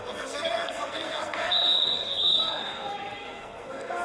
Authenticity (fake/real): fake